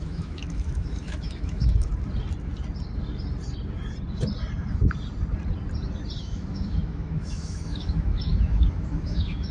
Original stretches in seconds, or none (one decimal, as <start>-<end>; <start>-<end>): 1.9-6.2